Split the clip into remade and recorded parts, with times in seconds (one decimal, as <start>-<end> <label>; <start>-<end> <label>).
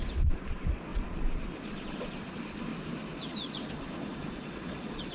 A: 0.0-2.7 remade; 2.7-3.3 recorded; 3.3-5.1 remade